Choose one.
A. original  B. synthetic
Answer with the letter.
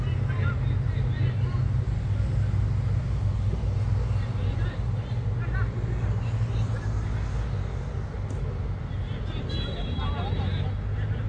A